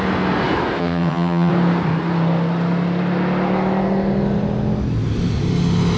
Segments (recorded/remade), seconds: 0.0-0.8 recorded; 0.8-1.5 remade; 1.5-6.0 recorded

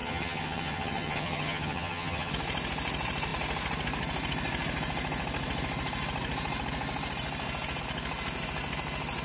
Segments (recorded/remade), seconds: 0.0-2.3 remade; 2.3-9.2 recorded